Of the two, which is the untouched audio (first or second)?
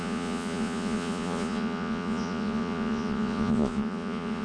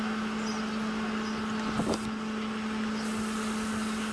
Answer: second